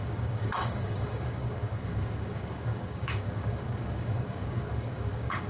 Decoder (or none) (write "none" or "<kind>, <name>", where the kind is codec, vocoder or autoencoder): codec, DAC